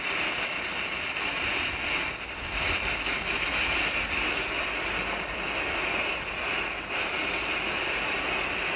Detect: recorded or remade recorded